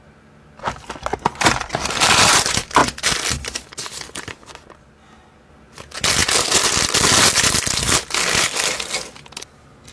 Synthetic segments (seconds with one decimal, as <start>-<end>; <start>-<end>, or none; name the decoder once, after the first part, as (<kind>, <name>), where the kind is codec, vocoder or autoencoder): none